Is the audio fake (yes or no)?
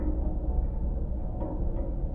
no